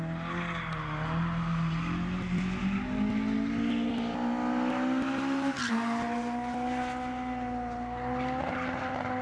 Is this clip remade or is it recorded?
recorded